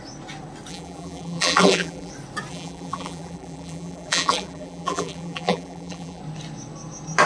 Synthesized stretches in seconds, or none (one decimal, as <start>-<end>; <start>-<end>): 0.7-2.1; 2.5-6.2

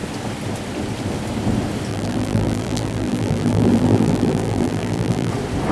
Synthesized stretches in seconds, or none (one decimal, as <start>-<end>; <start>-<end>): 1.9-5.3

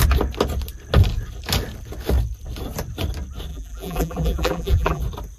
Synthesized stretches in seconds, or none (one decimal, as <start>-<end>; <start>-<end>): 3.5-5.0

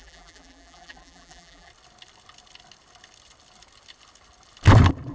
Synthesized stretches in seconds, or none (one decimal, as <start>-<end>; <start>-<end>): 0.0-1.7

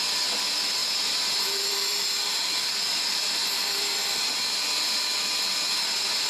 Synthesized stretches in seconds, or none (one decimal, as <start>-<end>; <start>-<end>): 0.8-4.2

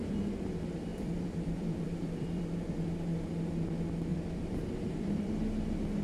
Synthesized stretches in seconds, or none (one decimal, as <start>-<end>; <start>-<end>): 0.9-2.7; 4.1-5.3

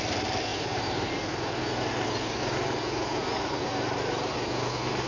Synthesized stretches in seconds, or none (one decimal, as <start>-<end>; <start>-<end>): 0.5-1.1

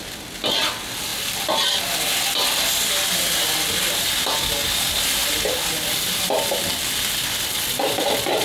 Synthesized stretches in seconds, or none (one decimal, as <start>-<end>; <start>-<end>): none